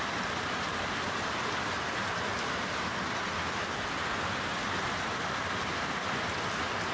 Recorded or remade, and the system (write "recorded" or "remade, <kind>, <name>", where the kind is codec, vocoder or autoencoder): recorded